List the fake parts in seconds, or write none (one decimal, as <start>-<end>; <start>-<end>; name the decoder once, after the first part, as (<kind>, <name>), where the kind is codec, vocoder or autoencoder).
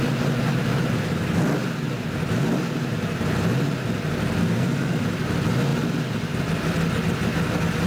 4.4-5.0 (codec, SNAC)